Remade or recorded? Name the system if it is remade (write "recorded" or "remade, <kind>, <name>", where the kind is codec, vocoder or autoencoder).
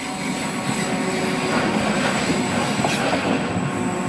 recorded